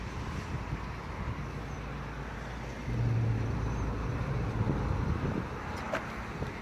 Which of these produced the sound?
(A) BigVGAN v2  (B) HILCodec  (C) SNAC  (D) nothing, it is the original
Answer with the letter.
D